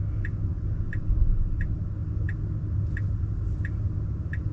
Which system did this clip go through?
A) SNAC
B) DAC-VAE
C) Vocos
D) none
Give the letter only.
D